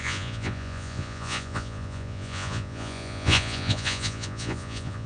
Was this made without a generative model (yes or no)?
no